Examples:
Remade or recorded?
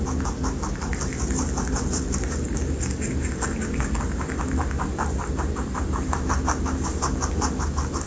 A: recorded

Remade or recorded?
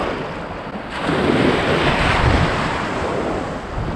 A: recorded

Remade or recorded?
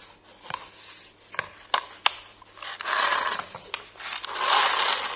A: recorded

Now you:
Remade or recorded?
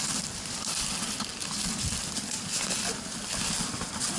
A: recorded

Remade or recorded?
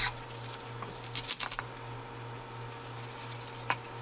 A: recorded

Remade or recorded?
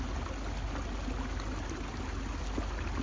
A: recorded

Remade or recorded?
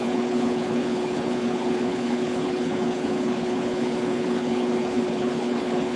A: remade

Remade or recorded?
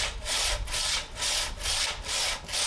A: recorded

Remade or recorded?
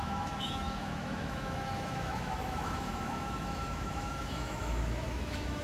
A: remade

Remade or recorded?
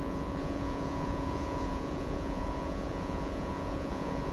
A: remade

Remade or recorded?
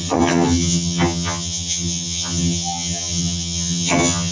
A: remade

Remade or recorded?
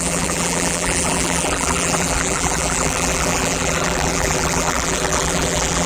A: remade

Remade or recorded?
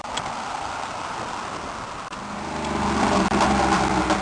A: recorded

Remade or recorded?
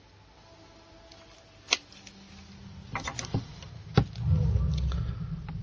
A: recorded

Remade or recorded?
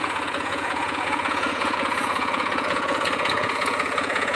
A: remade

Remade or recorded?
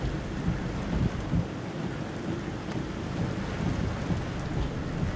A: recorded